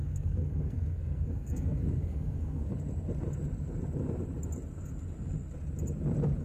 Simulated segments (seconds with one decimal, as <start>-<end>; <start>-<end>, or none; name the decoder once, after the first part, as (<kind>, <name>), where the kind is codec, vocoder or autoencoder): 0.0-2.7 (codec, SNAC)